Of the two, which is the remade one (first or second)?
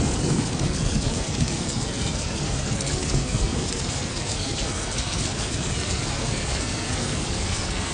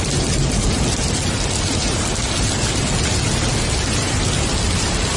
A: first